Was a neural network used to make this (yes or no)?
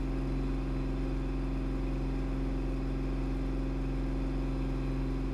no